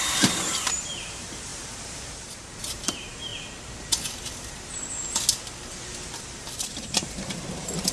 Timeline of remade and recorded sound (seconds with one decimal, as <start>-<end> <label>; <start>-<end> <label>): 0.0-3.3 remade; 3.3-6.2 recorded; 6.2-7.9 remade